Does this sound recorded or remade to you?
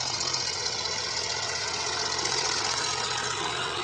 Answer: remade